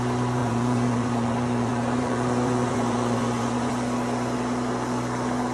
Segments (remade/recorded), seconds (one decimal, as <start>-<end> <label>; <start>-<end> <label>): 0.0-0.4 recorded; 0.4-3.7 remade; 3.7-5.5 recorded